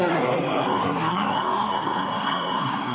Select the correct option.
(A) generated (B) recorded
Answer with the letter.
A